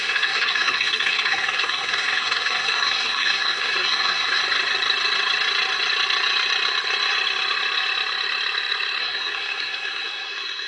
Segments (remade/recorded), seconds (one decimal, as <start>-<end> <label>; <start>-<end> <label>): 0.0-4.4 remade; 4.4-9.0 recorded; 9.0-10.7 remade

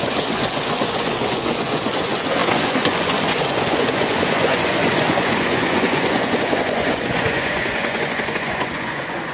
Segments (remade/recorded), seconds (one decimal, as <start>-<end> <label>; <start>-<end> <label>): 0.0-9.3 remade

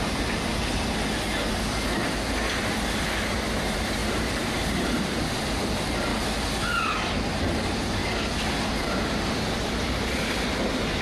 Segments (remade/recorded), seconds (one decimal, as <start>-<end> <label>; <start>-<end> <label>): 0.0-0.5 remade; 0.5-3.6 recorded; 3.6-6.1 remade; 6.1-7.0 recorded; 7.0-8.0 remade; 8.0-8.6 recorded; 8.6-11.0 remade

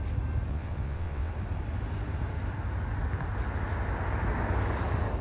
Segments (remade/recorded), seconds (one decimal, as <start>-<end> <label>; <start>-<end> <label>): 0.0-0.5 recorded; 0.5-1.3 remade; 1.3-5.2 recorded

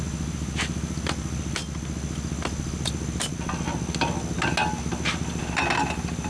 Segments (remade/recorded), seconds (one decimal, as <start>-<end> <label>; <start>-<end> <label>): 0.0-6.3 recorded